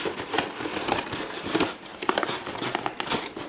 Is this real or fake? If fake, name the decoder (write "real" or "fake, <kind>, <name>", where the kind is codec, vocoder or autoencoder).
real